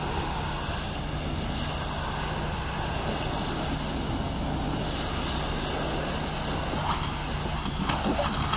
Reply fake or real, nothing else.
real